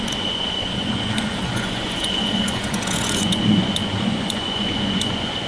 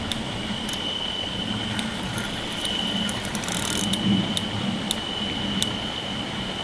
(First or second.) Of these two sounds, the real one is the second